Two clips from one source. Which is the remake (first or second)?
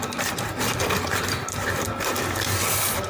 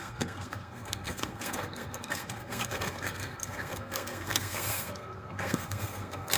second